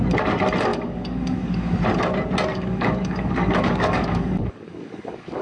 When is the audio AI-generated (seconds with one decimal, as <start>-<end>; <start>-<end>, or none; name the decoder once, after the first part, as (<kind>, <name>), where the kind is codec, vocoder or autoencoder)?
0.7-1.7 (codec, DAC); 2.5-5.4

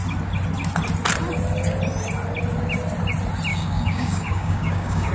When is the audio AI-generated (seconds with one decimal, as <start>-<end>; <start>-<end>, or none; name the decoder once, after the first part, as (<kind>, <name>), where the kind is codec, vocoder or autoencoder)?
3.5-5.1 (codec, DAC)

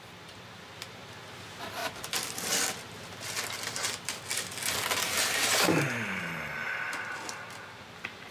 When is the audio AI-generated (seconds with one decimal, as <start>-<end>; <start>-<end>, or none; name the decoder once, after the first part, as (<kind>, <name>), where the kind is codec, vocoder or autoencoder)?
none

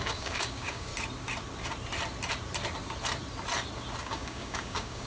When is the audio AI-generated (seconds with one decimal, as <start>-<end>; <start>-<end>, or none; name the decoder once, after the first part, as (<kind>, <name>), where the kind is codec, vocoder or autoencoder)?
0.0-0.9 (codec, DAC); 4.0-5.1

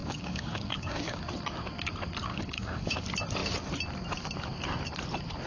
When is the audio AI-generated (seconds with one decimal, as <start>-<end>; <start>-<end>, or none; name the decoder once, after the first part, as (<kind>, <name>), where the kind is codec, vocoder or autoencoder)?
0.0-1.2 (codec, DAC); 2.3-3.0

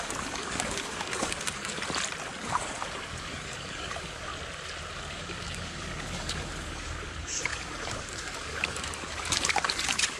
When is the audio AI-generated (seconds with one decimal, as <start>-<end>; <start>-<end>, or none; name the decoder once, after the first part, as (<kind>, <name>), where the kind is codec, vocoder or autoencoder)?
0.0-1.8 (codec, DAC); 2.4-4.3; 5.0-10.2